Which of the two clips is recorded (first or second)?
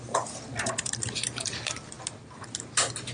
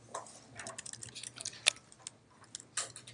second